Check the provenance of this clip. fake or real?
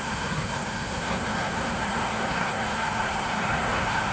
fake